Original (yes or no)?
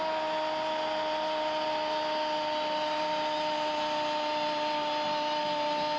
yes